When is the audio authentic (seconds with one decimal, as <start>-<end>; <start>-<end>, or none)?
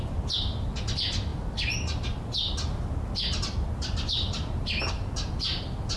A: 0.0-6.0